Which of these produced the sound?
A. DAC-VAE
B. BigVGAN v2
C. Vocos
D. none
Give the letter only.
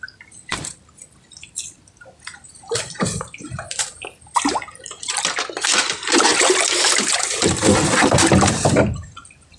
B